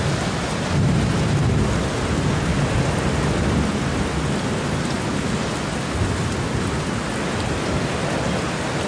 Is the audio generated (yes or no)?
no